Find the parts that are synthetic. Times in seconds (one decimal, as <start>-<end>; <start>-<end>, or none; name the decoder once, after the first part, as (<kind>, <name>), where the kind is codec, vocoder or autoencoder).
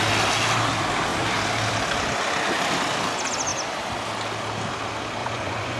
5.2-5.8 (vocoder, Vocos)